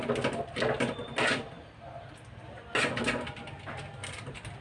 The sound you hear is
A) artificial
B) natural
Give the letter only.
B